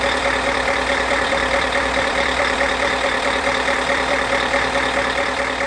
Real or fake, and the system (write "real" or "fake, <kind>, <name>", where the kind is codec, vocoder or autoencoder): fake, vocoder, BigVGAN v2